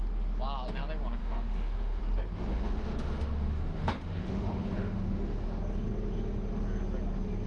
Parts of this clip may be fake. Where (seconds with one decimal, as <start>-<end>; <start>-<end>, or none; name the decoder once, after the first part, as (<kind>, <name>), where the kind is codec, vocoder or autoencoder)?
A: 1.2-2.0 (autoencoder, DAC-VAE); 2.5-5.6